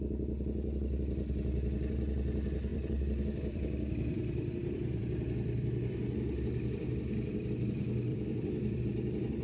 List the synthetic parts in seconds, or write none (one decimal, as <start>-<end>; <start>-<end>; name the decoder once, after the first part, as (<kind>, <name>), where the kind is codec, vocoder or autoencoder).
2.7-7.5 (vocoder, BigVGAN v2); 8.1-8.8